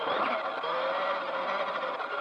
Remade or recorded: recorded